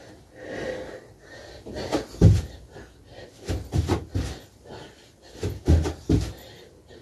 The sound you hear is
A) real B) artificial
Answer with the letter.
A